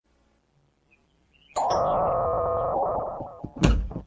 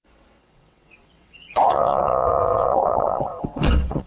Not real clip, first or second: second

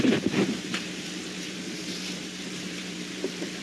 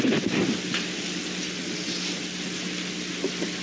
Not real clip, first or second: first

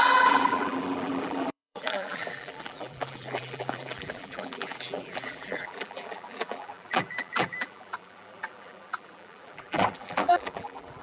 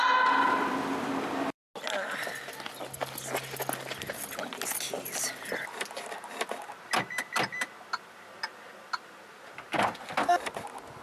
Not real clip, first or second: first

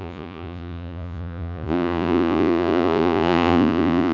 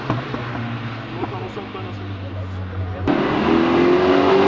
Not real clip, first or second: first